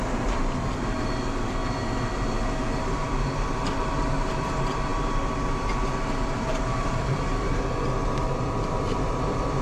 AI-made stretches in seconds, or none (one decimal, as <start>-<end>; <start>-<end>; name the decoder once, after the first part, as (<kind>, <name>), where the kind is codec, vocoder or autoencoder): 0.0-1.6 (vocoder, BigVGAN v2); 2.6-9.6